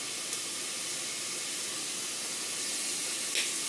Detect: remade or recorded recorded